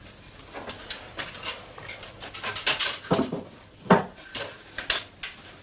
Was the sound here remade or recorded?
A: recorded